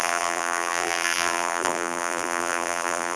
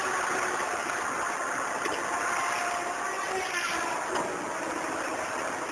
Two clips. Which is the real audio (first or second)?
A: second